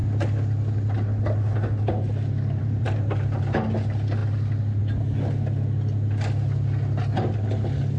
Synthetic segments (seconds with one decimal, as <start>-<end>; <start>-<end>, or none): 2.6-3.4